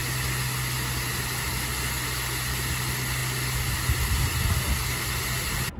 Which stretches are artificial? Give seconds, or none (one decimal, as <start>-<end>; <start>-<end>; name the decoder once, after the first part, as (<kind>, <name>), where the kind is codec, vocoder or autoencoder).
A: none